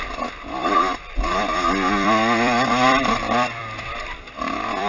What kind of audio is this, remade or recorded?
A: remade